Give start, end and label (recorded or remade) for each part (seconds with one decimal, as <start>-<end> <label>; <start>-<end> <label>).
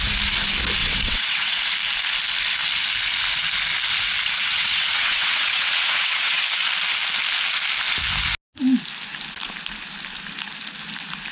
0.0-0.8 recorded; 0.8-1.6 remade; 1.6-4.4 recorded; 4.4-6.4 remade; 6.4-11.3 recorded